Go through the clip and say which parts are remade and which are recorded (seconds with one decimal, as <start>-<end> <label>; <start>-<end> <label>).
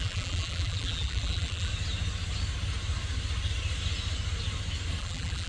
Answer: 0.0-1.7 remade; 1.7-5.0 recorded; 5.0-5.5 remade